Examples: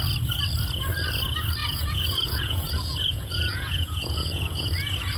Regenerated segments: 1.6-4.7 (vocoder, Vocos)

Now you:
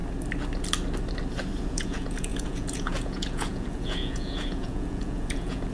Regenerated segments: 1.6-5.7 (vocoder, Vocos)